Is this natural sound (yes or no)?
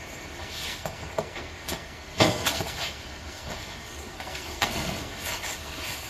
no